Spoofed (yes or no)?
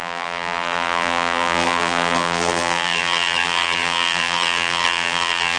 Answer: yes